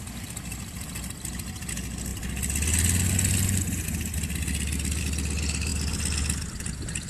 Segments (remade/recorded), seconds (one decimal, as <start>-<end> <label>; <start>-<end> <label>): 0.0-7.1 recorded